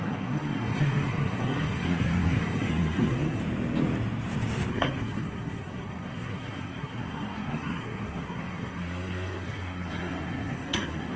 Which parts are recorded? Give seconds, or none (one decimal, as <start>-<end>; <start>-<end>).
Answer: 3.4-4.7